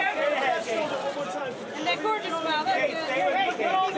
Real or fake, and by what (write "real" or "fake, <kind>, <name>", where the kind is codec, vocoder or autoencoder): real